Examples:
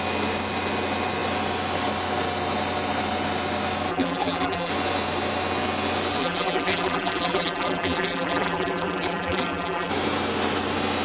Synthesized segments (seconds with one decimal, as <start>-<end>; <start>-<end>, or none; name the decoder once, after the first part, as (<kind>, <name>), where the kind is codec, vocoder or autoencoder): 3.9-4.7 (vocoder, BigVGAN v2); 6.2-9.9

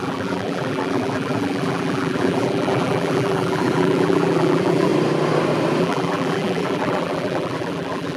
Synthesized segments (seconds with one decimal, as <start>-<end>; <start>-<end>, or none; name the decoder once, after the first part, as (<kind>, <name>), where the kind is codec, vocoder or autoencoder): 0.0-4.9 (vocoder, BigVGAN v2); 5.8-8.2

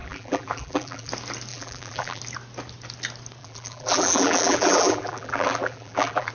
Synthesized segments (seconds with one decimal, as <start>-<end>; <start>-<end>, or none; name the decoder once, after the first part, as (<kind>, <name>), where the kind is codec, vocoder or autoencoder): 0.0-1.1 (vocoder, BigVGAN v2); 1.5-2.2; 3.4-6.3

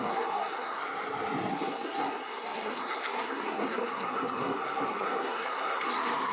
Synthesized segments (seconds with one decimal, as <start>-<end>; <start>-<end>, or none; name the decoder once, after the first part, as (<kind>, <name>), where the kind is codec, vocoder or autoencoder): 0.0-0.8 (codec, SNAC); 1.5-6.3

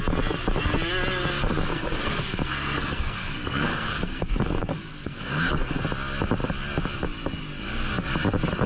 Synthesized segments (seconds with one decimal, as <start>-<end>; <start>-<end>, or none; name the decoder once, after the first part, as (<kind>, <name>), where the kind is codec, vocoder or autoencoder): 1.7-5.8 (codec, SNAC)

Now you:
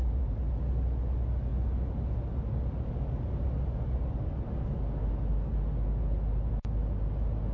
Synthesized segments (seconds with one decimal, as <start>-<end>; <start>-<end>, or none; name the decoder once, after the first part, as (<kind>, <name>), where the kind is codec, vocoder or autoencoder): 0.0-0.6 (vocoder, BigVGAN v2)

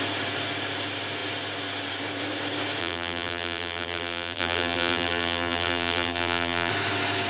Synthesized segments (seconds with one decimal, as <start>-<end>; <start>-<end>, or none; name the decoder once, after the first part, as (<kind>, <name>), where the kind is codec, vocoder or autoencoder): 2.8-6.7 (vocoder, BigVGAN v2)